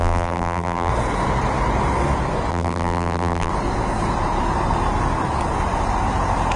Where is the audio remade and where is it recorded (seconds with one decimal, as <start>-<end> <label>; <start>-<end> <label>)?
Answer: 0.0-0.9 remade; 0.9-2.5 recorded; 2.5-3.5 remade; 3.5-6.6 recorded